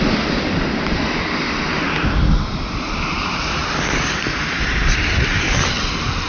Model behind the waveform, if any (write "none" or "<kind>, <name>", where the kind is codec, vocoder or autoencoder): vocoder, BigVGAN v2